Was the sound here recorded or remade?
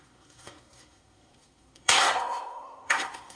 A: remade